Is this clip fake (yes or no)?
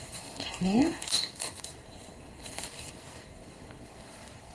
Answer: yes